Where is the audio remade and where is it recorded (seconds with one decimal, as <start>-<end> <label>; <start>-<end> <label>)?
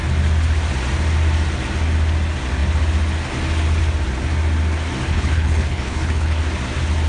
0.0-5.1 recorded; 5.1-6.4 remade; 6.4-7.1 recorded